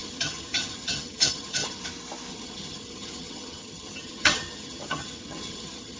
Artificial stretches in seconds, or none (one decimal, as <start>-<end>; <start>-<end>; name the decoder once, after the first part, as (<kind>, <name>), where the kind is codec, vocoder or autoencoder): 0.0-1.8 (vocoder, HiFi-GAN); 2.3-6.0

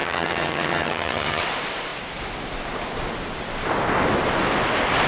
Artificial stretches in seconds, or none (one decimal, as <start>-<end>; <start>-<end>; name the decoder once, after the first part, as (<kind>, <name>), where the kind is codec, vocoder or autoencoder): 0.0-1.4 (vocoder, HiFi-GAN)